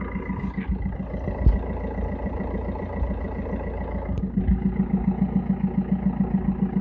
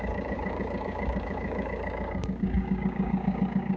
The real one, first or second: first